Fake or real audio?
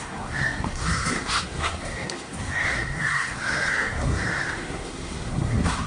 fake